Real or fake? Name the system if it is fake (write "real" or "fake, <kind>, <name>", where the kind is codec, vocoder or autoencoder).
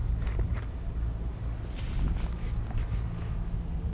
real